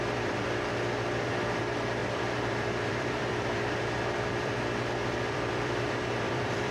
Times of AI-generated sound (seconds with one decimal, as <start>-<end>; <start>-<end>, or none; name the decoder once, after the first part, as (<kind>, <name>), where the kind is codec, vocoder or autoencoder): 0.0-0.7 (vocoder, BigVGAN v2); 1.6-6.7